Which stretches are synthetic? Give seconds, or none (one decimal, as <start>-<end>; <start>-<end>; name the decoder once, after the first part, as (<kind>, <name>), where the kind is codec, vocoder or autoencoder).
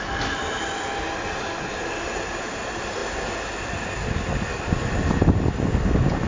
none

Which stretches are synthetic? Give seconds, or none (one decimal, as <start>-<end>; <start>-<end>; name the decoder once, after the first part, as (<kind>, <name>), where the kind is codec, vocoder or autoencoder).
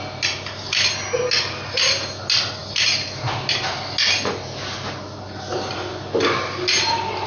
none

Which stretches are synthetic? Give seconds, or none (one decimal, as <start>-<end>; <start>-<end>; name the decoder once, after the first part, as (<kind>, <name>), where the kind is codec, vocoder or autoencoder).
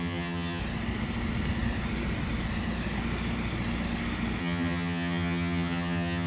0.0-0.6 (vocoder, HiFi-GAN); 4.4-6.3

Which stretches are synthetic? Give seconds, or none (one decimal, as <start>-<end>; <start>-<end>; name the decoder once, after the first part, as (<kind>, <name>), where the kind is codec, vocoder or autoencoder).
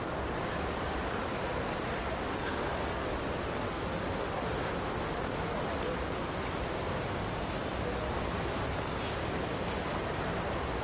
none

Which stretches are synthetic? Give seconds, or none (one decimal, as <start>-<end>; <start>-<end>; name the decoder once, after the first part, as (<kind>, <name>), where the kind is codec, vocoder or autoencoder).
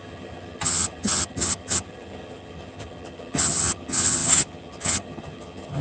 0.0-5.8 (vocoder, HiFi-GAN)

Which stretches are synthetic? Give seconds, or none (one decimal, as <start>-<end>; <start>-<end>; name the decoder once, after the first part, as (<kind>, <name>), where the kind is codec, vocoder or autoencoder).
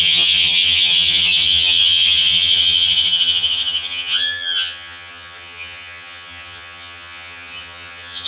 0.0-8.3 (vocoder, HiFi-GAN)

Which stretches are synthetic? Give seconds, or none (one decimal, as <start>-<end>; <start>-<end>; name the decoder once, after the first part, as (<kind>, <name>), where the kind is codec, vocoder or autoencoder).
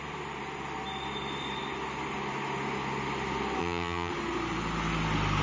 3.6-4.1 (vocoder, HiFi-GAN)